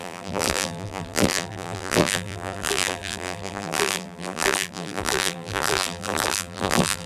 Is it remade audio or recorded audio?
remade